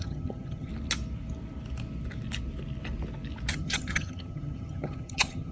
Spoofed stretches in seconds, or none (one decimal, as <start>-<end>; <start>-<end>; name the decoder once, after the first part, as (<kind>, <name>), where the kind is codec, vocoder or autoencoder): 0.0-0.7 (vocoder, HiFi-GAN); 3.5-5.5